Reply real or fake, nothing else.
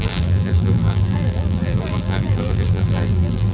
fake